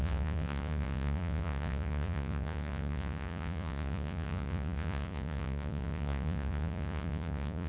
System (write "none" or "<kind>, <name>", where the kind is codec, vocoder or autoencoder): vocoder, Vocos